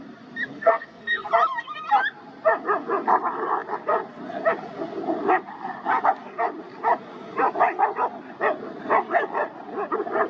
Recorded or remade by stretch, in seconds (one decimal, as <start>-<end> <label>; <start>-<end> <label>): 0.0-0.5 recorded; 0.5-1.3 remade; 1.3-10.3 recorded